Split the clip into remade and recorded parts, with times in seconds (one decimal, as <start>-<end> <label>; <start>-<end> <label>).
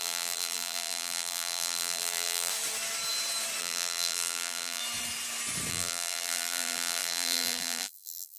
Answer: 0.0-2.5 remade; 2.5-3.6 recorded; 3.6-4.8 remade; 4.8-5.7 recorded; 5.7-8.4 remade